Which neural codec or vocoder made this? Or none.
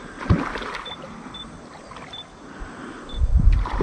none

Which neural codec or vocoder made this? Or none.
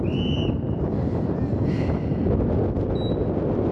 none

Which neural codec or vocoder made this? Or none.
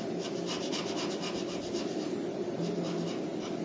none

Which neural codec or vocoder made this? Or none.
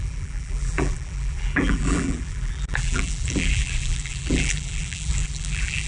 vocoder, BigVGAN v2